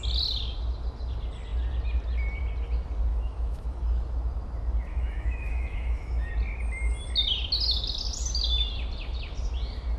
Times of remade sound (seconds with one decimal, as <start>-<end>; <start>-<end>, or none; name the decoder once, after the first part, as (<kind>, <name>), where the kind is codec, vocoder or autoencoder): 3.1-3.8 (autoencoder, DAC-VAE); 4.9-6.3